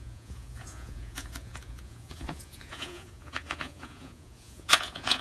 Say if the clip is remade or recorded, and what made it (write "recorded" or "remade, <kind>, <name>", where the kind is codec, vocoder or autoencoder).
remade, vocoder, Vocos